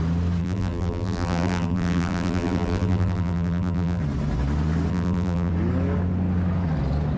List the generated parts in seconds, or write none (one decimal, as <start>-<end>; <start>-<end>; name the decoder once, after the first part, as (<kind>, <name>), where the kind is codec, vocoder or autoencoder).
0.4-4.0 (vocoder, BigVGAN v2); 4.9-5.5